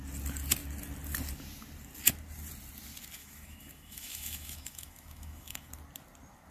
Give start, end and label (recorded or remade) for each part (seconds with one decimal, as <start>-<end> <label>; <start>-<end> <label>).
0.0-3.2 recorded; 3.2-5.7 remade; 5.7-6.5 recorded